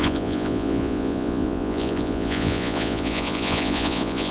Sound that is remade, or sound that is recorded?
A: remade